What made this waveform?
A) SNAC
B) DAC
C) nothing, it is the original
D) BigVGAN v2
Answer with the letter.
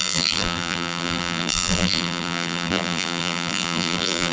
D